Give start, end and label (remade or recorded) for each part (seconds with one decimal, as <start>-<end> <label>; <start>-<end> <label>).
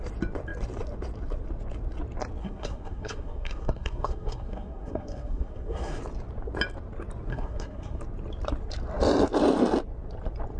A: 0.0-2.4 recorded; 2.4-6.0 remade; 6.0-7.3 recorded; 7.3-8.0 remade; 8.0-10.6 recorded